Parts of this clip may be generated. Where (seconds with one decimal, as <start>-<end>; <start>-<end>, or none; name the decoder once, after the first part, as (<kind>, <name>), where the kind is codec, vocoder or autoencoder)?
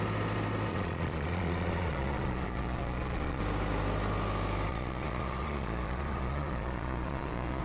0.7-3.4 (vocoder, Vocos); 4.7-7.6